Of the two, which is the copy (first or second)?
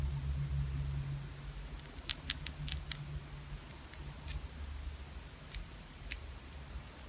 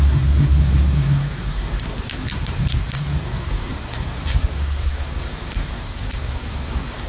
second